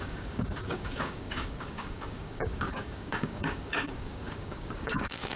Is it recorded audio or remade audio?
remade